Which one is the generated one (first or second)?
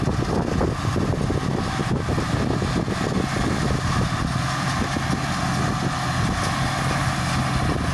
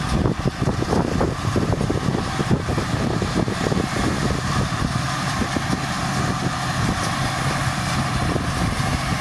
second